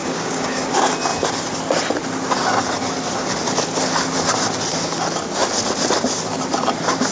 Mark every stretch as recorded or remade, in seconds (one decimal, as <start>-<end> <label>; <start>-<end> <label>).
0.0-0.7 remade; 0.7-7.1 recorded